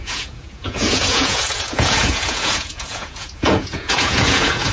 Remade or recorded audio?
remade